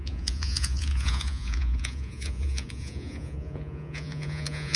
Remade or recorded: remade